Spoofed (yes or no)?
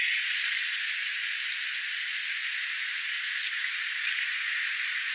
no